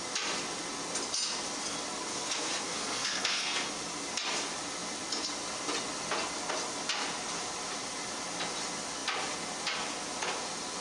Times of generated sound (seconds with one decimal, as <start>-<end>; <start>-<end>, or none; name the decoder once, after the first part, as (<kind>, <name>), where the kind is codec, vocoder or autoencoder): 2.1-3.7 (codec, SNAC)